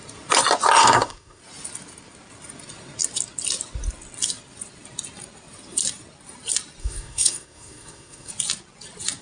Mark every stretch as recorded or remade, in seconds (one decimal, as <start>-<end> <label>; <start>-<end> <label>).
0.0-0.8 recorded; 0.8-1.4 remade; 1.4-6.8 recorded; 6.8-8.3 remade; 8.3-9.2 recorded